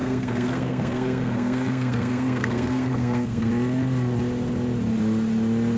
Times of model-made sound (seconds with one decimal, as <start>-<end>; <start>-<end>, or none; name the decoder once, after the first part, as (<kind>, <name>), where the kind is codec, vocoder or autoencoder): 0.0-3.5 (codec, SNAC)